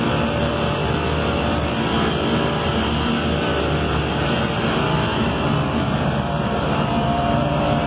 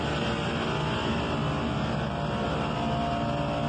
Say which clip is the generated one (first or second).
first